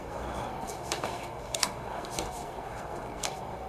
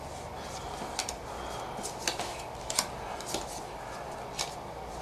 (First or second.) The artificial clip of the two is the first